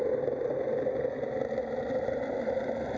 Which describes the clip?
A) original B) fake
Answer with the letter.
A